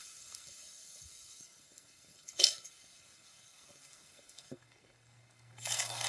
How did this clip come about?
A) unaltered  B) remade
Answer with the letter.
B